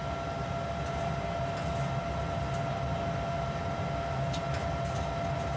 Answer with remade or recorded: recorded